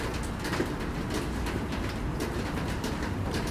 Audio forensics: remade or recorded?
recorded